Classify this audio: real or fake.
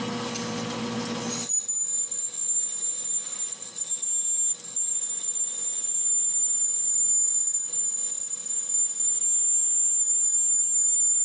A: real